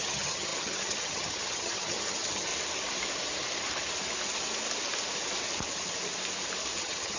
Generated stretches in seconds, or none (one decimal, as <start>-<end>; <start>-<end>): 0.0-2.5; 6.8-7.2